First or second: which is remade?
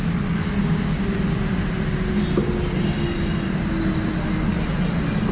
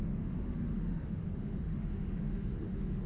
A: second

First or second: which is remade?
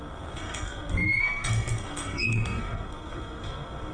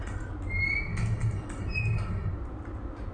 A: first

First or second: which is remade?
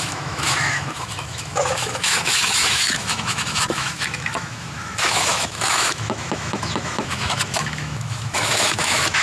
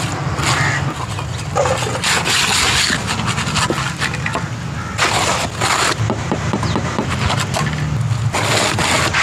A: first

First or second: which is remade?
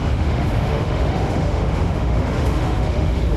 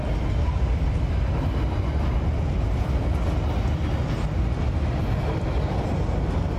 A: first